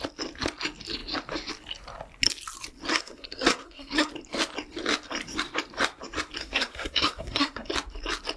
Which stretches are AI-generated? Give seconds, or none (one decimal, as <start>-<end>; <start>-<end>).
2.9-4.1; 6.4-7.7